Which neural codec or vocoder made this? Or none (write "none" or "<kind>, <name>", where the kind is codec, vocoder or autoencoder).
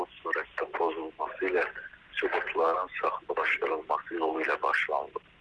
none